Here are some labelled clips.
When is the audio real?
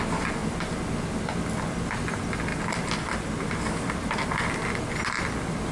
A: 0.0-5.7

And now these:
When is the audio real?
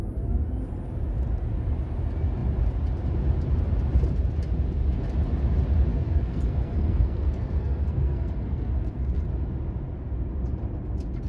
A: 0.0-5.9; 9.3-11.3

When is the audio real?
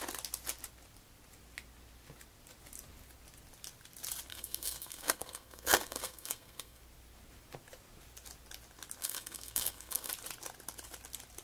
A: 0.0-4.3; 6.8-9.0; 10.1-11.4